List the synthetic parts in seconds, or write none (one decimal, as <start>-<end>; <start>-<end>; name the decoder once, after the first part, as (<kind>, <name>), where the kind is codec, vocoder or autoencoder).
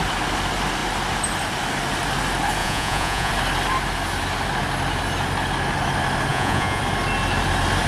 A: 2.6-3.3 (vocoder, Vocos); 6.3-6.8